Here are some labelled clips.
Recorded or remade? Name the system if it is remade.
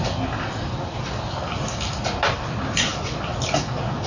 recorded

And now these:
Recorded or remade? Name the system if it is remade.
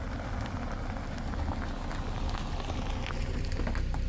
recorded